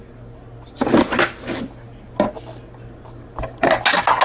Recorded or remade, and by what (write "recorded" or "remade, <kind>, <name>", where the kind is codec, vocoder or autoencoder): recorded